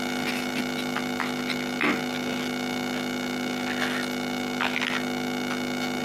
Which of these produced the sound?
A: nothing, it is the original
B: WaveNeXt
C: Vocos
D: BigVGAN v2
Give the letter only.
A